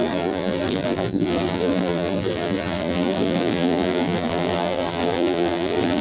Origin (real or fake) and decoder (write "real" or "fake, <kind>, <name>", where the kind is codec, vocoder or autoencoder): fake, vocoder, BigVGAN v2